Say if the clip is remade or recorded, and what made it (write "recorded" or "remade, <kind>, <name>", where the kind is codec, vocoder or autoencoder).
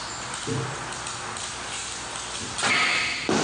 recorded